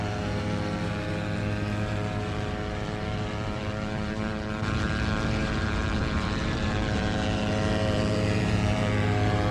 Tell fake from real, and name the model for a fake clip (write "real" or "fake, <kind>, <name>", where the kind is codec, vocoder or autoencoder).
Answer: fake, vocoder, BigVGAN v2